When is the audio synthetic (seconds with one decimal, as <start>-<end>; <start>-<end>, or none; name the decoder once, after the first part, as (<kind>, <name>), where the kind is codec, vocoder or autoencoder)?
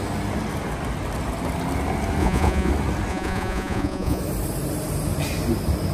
2.2-2.7 (vocoder, Vocos); 3.1-4.2